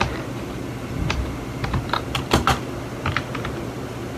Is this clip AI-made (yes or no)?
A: no